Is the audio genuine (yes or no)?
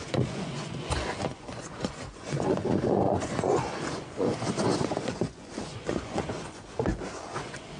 no